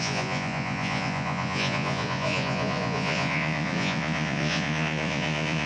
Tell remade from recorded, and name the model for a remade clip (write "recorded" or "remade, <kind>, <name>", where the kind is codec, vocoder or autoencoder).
remade, vocoder, Vocos